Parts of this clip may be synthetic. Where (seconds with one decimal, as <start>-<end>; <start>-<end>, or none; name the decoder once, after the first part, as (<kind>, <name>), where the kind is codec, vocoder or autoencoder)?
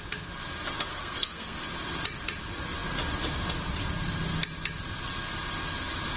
0.9-1.6 (codec, SNAC)